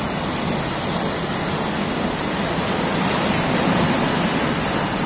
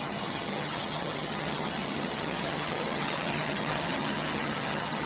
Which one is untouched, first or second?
first